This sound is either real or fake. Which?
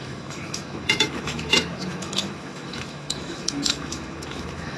fake